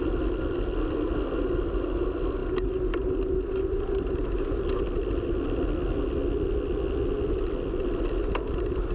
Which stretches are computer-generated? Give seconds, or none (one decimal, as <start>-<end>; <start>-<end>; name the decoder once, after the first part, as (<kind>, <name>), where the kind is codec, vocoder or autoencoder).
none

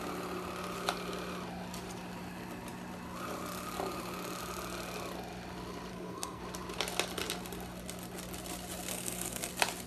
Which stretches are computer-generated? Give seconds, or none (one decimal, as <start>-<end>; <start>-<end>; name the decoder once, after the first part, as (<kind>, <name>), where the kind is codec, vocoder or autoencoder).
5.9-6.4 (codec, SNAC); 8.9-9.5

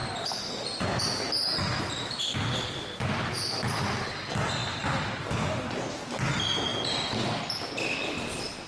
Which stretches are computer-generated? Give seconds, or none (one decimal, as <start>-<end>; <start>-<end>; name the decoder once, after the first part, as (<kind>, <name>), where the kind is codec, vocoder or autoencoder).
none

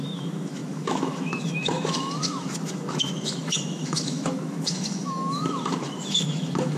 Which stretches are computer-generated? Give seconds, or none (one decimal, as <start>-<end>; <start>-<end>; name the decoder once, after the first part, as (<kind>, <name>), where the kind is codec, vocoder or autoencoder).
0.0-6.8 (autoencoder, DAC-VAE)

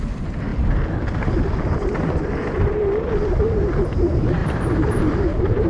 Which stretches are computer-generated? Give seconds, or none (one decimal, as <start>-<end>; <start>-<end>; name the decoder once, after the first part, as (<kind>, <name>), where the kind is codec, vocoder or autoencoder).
0.0-0.5 (vocoder, BigVGAN v2); 3.9-5.7

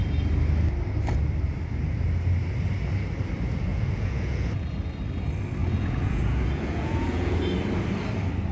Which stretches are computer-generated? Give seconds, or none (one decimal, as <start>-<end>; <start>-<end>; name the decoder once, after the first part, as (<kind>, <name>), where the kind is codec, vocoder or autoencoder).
3.7-4.5 (vocoder, Vocos); 5.6-7.4

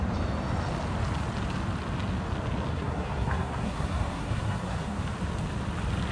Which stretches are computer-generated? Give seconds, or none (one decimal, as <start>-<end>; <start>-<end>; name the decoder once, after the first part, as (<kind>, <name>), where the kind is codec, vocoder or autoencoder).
2.7-5.0 (codec, SNAC)